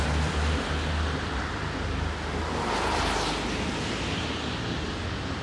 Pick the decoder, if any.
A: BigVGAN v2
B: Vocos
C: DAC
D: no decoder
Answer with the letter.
D